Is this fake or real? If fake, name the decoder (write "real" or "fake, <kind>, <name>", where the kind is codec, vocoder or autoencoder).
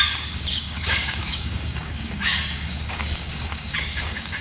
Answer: fake, codec, DAC